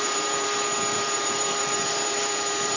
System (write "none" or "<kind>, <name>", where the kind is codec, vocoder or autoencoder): vocoder, BigVGAN v2